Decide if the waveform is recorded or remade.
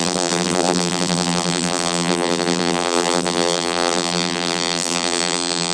remade